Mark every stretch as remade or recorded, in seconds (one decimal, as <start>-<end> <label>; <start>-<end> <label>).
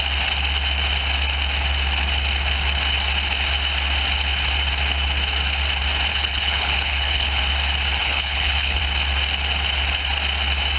0.0-6.1 recorded; 6.1-7.4 remade; 7.4-8.0 recorded; 8.0-8.8 remade; 8.8-10.8 recorded